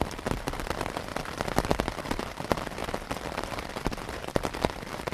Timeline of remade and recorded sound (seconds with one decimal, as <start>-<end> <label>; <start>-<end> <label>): 0.0-1.1 recorded; 1.1-1.7 remade; 1.7-5.1 recorded